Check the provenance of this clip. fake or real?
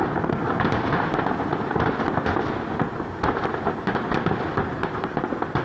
real